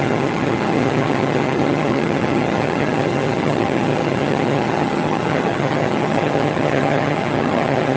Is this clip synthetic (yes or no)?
yes